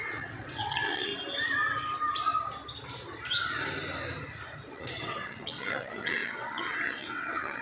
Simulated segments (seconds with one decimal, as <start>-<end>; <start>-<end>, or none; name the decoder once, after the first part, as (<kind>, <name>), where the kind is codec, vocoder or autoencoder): 0.0-1.1 (vocoder, WaveNeXt); 4.7-7.6